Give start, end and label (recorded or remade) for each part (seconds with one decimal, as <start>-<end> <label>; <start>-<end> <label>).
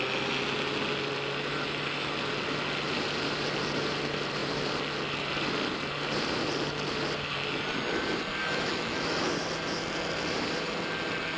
0.0-1.5 recorded; 1.5-2.1 remade; 2.1-8.4 recorded; 8.4-9.3 remade; 9.3-11.4 recorded